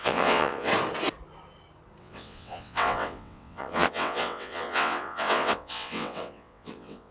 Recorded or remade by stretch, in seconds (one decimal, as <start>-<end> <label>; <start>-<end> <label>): 0.0-0.7 remade; 0.7-2.0 recorded; 2.0-7.1 remade